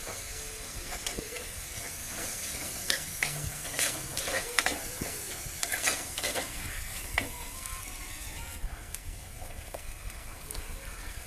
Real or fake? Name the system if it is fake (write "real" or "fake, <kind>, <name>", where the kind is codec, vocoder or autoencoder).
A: fake, codec, SNAC